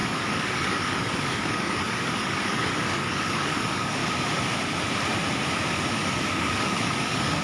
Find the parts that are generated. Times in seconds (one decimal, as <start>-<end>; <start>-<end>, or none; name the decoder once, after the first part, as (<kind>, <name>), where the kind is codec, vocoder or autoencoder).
0.0-4.0 (codec, DAC); 5.9-7.4

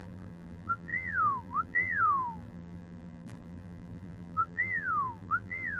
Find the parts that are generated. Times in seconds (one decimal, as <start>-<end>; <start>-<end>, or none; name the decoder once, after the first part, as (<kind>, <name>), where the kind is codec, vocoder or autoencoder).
0.0-5.8 (vocoder, BigVGAN v2)